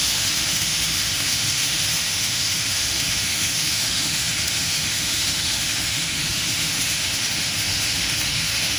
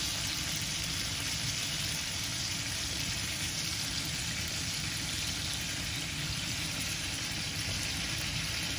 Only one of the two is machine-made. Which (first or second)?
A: first